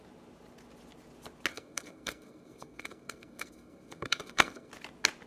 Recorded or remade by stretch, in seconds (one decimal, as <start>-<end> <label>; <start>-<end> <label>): 0.0-1.5 recorded; 1.5-4.7 remade; 4.7-5.3 recorded